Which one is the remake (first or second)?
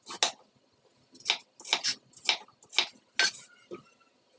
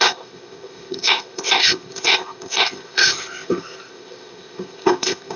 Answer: second